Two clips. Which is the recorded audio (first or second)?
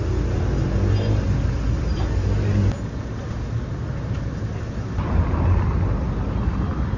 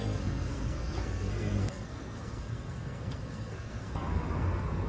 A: first